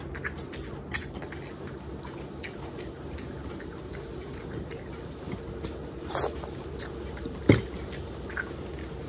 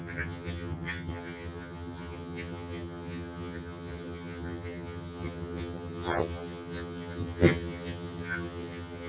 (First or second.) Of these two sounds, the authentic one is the first